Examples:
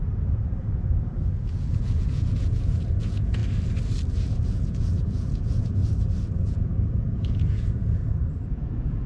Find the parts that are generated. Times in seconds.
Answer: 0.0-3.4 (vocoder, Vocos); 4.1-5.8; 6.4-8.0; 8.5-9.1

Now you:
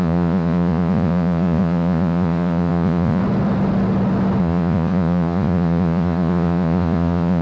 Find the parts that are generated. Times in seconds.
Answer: 0.0-3.2 (vocoder, Vocos); 4.4-7.4

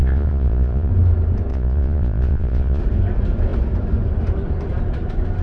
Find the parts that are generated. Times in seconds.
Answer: 0.0-0.9 (vocoder, Vocos); 1.5-2.8

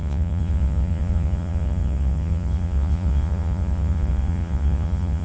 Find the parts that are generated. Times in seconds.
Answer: 0.0-5.2 (vocoder, Vocos)

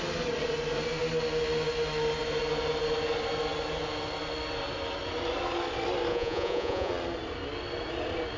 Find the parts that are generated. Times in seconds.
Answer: 6.1-6.9 (vocoder, Vocos)

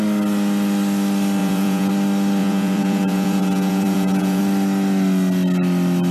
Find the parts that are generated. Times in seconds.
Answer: 1.4-1.9 (vocoder, Vocos); 2.4-4.4

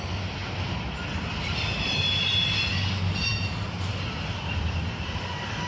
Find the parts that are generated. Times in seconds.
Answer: none